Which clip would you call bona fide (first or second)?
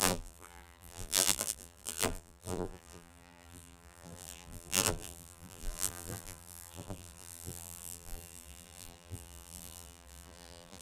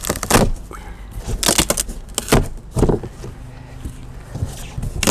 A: second